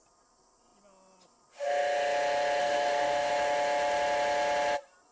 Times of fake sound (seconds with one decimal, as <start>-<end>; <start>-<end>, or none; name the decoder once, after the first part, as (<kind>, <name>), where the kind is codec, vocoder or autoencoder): 2.6-3.3 (codec, SNAC)